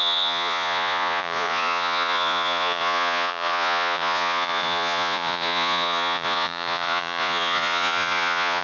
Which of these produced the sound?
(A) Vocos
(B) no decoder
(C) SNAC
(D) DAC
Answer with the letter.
A